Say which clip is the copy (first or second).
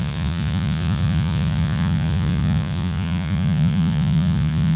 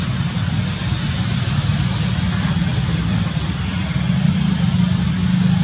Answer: first